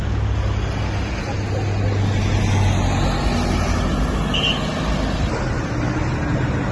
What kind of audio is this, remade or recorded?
recorded